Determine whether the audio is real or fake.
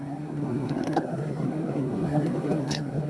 fake